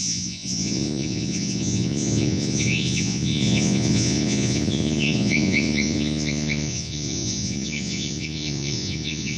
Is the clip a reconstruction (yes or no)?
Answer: yes